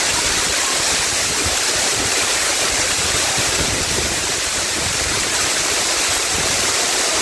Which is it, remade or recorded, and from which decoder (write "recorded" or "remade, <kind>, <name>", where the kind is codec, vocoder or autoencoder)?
remade, vocoder, BigVGAN v2